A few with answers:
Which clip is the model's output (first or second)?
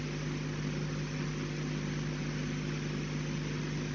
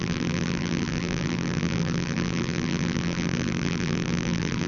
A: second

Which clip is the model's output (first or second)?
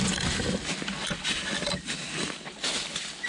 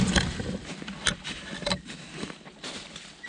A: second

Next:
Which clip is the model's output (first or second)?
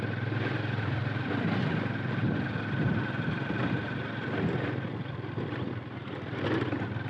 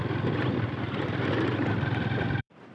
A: second